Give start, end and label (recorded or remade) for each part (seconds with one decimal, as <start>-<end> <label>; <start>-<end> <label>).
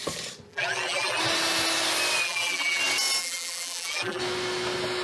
0.0-0.5 recorded; 0.5-1.2 remade; 1.2-2.2 recorded; 2.2-2.8 remade; 2.8-3.2 recorded; 3.2-4.2 remade; 4.2-5.0 recorded